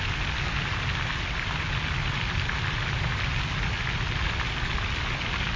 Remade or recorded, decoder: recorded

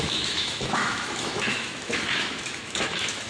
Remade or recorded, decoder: remade, autoencoder, DAC-VAE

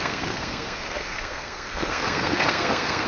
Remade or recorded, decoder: remade, codec, SNAC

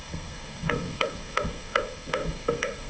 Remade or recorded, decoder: remade, codec, SNAC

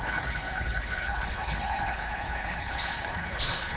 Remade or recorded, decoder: remade, codec, HILCodec